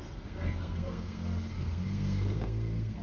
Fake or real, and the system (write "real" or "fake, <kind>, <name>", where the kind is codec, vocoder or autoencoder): fake, codec, SNAC